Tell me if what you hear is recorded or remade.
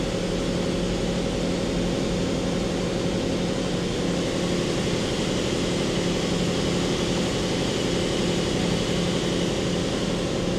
recorded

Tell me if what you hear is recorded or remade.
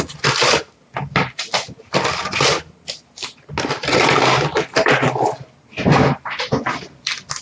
recorded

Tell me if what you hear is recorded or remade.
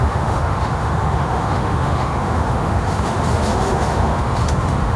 remade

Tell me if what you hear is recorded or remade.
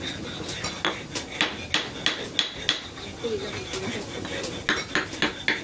recorded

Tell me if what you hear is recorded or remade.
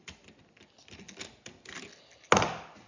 recorded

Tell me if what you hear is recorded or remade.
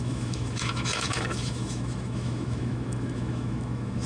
remade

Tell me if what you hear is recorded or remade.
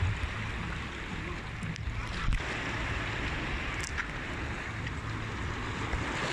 recorded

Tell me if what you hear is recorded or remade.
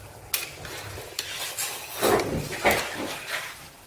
recorded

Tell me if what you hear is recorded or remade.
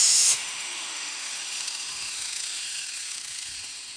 remade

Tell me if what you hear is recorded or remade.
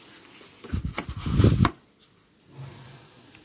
recorded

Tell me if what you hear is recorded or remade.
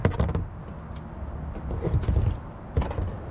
recorded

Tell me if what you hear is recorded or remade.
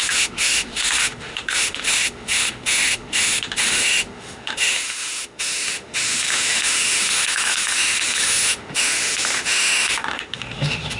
remade